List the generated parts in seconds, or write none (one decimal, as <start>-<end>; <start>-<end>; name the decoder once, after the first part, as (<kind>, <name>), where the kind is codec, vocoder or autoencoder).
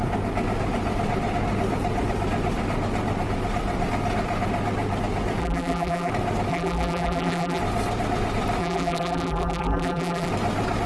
5.4-6.1 (vocoder, BigVGAN v2); 6.5-7.6; 8.6-10.3